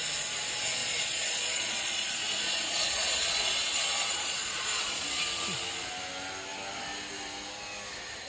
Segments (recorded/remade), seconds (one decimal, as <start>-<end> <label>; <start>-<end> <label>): 0.0-0.8 recorded; 0.8-5.1 remade; 5.1-8.3 recorded